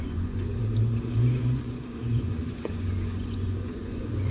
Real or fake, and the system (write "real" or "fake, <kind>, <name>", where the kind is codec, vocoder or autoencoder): fake, vocoder, Vocos